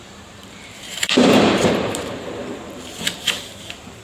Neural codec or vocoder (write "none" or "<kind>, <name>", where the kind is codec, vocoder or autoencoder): vocoder, BigVGAN v2